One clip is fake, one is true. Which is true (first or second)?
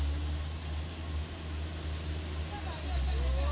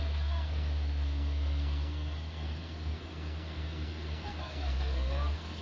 first